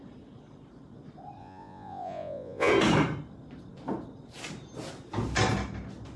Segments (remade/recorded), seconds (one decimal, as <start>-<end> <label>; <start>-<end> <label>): 0.0-1.4 recorded; 1.4-2.7 remade; 2.7-6.2 recorded